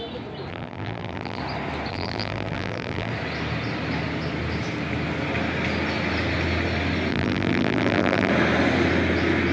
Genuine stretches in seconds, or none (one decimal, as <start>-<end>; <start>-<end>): 0.0-0.5; 1.4-1.9; 3.1-7.1; 8.3-9.5